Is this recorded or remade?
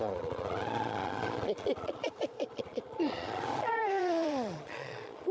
remade